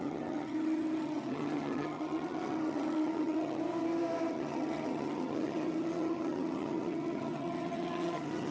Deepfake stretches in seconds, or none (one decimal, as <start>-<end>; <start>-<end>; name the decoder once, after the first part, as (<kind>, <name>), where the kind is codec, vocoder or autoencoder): 0.0-3.6 (vocoder, HiFi-GAN); 4.3-8.5